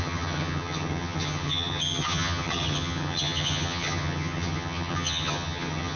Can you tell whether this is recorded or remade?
remade